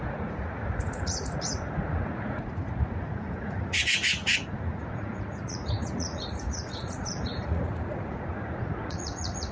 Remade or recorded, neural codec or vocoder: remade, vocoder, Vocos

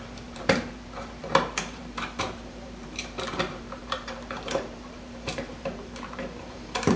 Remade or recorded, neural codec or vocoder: remade, vocoder, BigVGAN v2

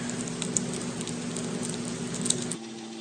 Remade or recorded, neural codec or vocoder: recorded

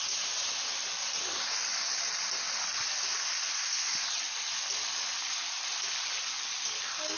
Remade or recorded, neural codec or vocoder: recorded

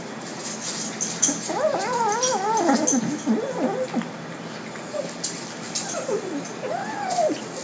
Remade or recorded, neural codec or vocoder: recorded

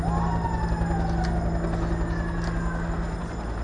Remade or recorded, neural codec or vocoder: recorded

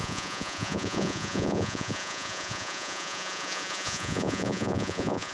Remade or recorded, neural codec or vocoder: remade, vocoder, Vocos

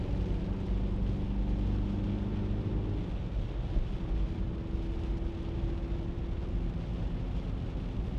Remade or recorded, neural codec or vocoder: recorded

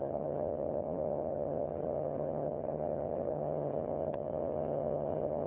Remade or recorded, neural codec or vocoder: remade, vocoder, HiFi-GAN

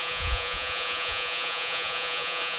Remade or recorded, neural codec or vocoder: remade, vocoder, Vocos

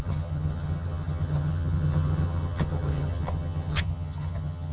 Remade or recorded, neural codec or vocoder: remade, vocoder, HiFi-GAN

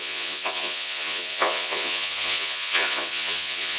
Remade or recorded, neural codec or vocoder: remade, vocoder, Vocos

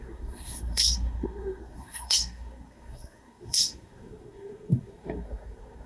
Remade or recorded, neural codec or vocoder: remade, codec, SNAC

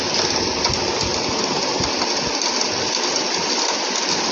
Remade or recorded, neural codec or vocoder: recorded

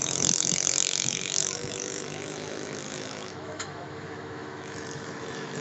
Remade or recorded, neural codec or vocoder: remade, autoencoder, DAC-VAE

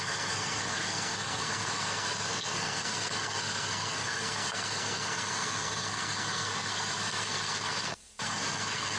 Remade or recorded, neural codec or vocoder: remade, codec, SNAC